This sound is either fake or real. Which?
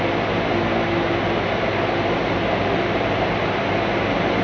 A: real